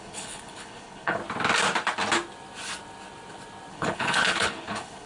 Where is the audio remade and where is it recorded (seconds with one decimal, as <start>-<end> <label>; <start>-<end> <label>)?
0.0-1.2 remade; 1.2-3.7 recorded; 3.7-5.1 remade